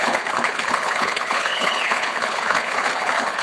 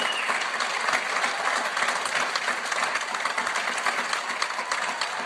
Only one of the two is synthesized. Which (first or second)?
first